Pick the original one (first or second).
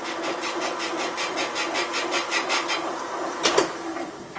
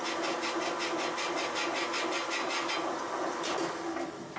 second